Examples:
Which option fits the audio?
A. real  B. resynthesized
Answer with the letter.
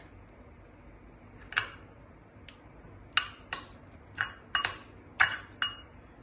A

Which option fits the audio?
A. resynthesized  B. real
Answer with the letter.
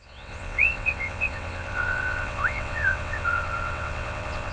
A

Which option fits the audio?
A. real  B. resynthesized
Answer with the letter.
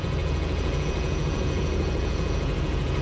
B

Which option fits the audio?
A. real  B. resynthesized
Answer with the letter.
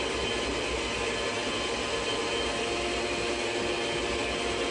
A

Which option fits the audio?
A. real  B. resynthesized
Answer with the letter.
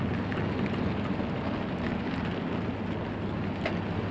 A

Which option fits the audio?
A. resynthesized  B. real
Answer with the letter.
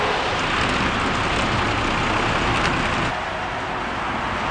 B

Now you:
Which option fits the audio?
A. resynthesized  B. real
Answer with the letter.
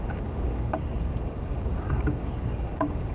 A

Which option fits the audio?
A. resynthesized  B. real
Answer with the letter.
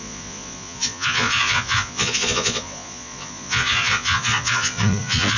A